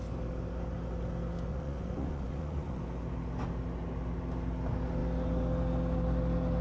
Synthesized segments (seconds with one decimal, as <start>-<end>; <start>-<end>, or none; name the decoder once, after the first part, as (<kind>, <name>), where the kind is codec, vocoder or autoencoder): 1.5-2.8 (vocoder, Vocos)